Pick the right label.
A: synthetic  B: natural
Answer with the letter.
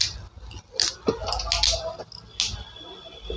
B